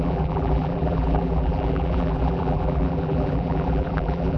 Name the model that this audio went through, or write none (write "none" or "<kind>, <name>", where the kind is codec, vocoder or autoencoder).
vocoder, BigVGAN v2